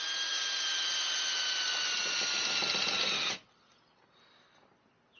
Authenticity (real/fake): real